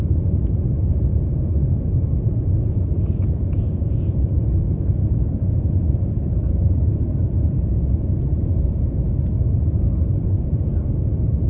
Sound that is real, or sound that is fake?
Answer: fake